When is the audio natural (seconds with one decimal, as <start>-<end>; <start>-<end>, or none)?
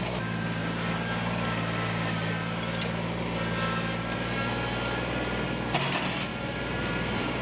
0.0-6.3